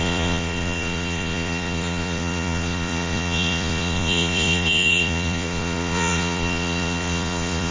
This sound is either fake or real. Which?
fake